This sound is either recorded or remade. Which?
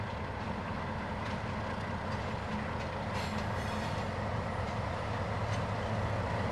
recorded